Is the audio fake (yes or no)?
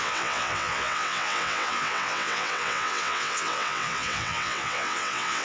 yes